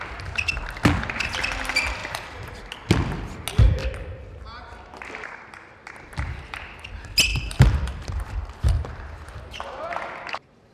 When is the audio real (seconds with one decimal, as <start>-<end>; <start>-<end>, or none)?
0.0-2.0; 2.6-7.3; 9.9-10.7